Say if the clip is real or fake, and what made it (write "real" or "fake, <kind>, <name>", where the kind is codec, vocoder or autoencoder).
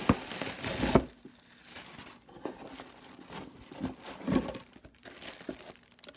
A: real